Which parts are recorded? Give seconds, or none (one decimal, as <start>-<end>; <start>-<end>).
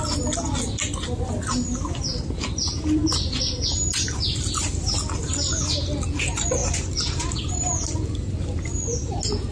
0.0-9.5